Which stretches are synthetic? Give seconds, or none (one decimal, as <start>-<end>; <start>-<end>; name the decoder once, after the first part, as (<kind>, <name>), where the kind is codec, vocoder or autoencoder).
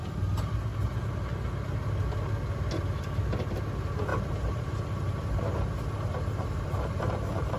4.1-7.6 (vocoder, BigVGAN v2)